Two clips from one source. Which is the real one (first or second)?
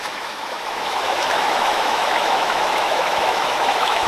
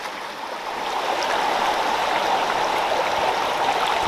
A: second